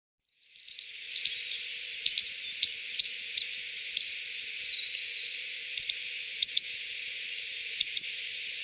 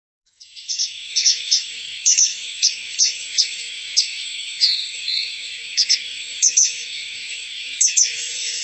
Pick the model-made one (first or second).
second